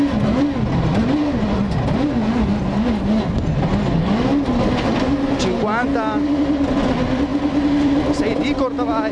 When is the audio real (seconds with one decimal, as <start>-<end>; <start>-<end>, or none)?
0.0-7.3; 7.9-9.1